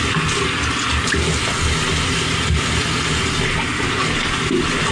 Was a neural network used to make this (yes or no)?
no